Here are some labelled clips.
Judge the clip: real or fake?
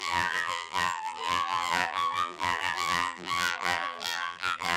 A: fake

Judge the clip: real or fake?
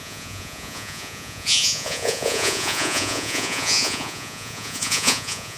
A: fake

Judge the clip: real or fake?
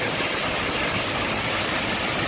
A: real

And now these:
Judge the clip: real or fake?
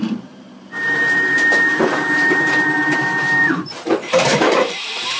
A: fake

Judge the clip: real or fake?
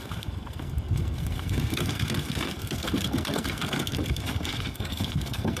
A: fake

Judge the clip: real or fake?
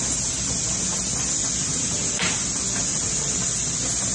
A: real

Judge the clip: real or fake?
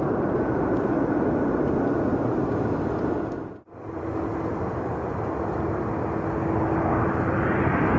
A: real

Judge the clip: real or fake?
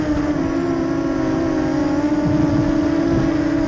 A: real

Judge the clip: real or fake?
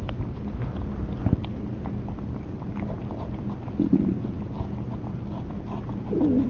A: real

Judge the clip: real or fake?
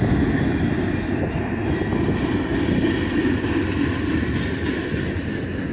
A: real